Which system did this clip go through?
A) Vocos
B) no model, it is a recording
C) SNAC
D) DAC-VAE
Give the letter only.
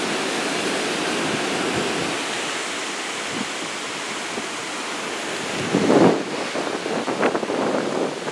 B